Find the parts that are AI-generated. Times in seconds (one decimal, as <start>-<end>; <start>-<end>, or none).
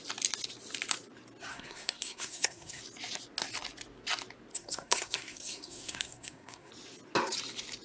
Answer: 1.5-2.8; 4.5-6.7